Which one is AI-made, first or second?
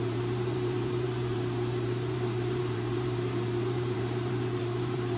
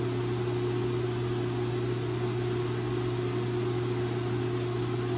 first